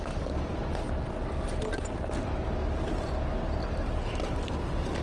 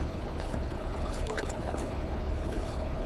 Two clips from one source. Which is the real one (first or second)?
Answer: first